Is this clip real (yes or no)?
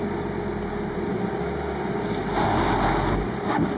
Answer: yes